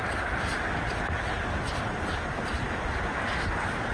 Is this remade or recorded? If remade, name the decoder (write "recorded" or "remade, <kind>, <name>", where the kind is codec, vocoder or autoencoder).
recorded